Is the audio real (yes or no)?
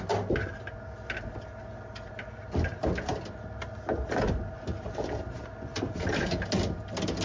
yes